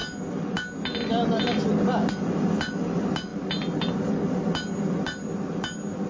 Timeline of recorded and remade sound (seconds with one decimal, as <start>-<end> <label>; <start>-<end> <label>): 0.0-6.1 recorded